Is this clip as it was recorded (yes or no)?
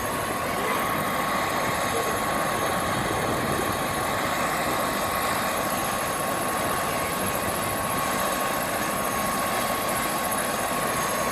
yes